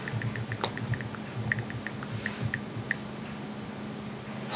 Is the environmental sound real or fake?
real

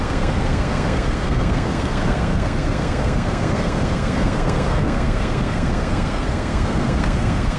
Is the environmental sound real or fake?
fake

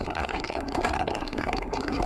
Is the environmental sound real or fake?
fake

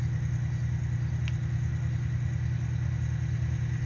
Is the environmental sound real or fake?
real